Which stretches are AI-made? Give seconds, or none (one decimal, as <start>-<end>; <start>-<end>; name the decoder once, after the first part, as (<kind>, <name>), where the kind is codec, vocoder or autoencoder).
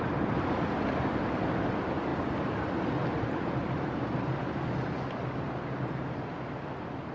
none